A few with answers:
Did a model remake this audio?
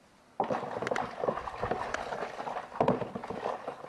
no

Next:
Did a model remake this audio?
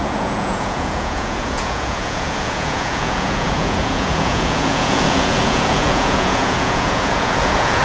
yes